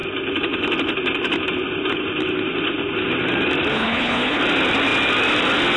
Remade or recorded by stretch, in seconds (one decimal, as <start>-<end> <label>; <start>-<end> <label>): 0.0-3.7 recorded; 3.7-4.4 remade; 4.4-5.8 recorded